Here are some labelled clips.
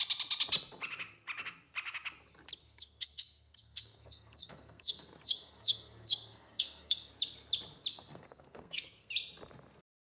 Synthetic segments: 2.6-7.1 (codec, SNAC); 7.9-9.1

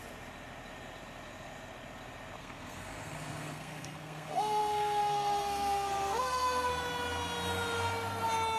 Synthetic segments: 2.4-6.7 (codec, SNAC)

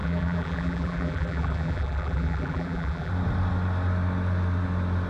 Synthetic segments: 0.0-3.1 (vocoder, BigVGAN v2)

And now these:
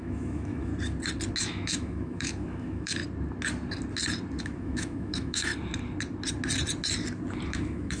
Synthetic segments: 0.0-0.7 (autoencoder, DAC-VAE); 1.4-3.0; 4.4-5.5; 7.5-8.0

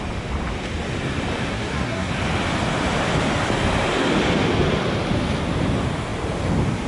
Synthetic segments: 1.5-2.1 (codec, SNAC)

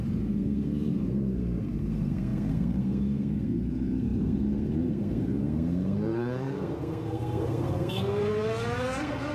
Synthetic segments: 0.0-9.3 (codec, SNAC)

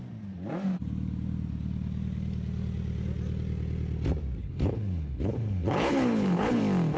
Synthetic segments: 4.4-6.6 (codec, HILCodec)

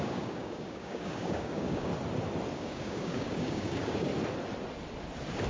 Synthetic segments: 0.0-1.9 (codec, DAC); 2.5-4.1